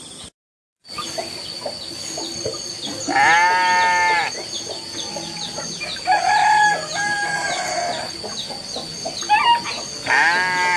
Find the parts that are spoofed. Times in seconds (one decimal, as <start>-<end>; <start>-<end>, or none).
none